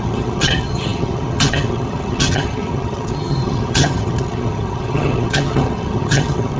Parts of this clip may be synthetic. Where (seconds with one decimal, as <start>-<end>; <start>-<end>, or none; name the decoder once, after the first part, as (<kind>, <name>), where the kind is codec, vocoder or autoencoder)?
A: 0.0-6.6 (vocoder, HiFi-GAN)